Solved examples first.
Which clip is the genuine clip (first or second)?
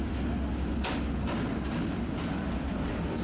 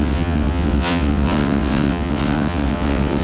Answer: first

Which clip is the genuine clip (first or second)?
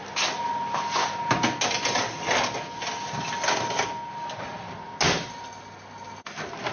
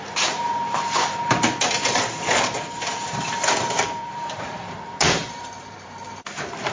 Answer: first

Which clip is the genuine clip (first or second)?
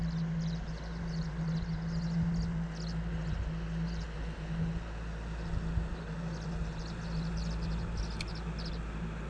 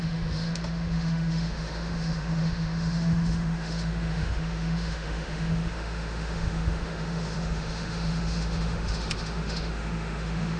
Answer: first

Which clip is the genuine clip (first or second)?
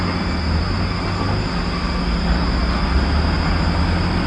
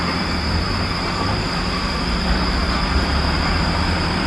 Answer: first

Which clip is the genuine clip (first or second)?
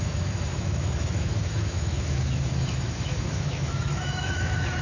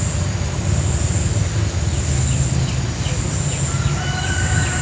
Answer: second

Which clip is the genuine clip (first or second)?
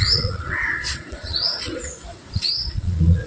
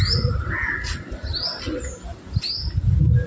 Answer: second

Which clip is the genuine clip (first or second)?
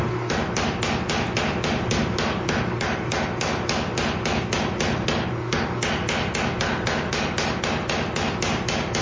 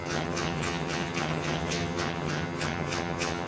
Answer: first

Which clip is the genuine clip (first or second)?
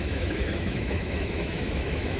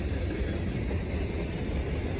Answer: second